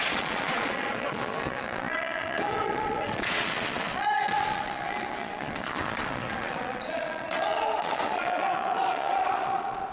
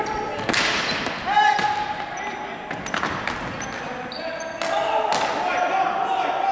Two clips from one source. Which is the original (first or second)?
second